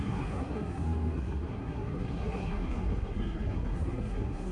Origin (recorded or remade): remade